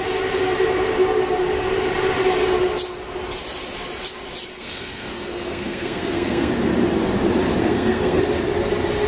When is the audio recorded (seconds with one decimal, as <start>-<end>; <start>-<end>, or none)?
0.0-4.5; 6.5-7.6; 8.2-9.1